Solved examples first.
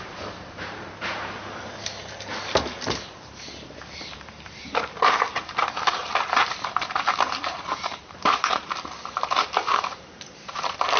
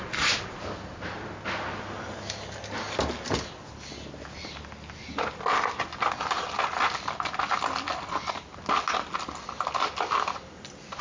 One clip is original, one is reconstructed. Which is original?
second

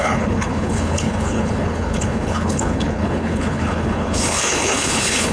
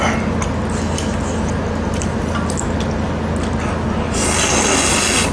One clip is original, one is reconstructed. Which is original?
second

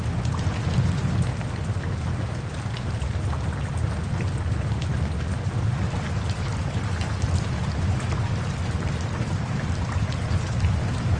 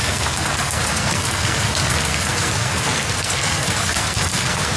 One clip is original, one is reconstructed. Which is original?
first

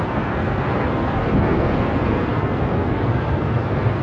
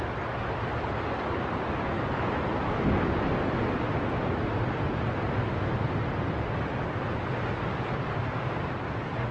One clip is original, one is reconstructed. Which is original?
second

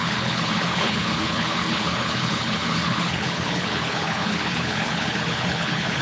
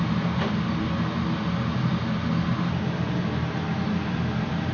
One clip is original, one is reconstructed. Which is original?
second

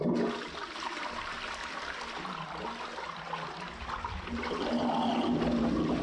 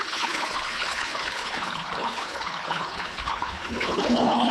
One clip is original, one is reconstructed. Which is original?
first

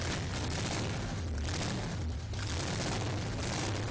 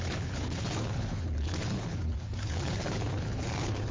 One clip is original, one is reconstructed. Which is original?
first